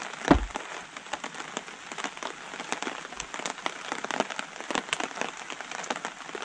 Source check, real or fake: real